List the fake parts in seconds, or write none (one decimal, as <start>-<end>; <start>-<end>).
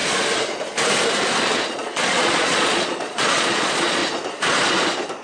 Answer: 1.7-4.0